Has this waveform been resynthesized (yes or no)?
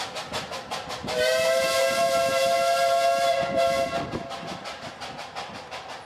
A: no